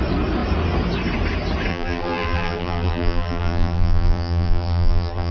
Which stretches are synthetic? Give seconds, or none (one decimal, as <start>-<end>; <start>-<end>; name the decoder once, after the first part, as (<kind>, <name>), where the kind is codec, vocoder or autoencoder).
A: 1.7-5.3 (vocoder, BigVGAN v2)